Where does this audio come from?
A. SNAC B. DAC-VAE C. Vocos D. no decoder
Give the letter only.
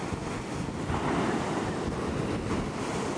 D